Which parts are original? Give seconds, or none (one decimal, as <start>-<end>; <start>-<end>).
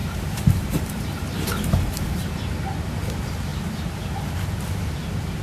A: 2.4-3.5; 4.3-5.4